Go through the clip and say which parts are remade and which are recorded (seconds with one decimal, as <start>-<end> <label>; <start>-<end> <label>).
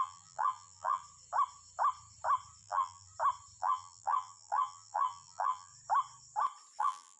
0.0-1.0 remade; 1.0-2.6 recorded; 2.6-3.1 remade; 3.1-3.6 recorded; 3.6-5.7 remade; 5.7-6.8 recorded; 6.8-7.2 remade